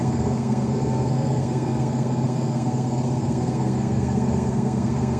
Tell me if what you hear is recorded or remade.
remade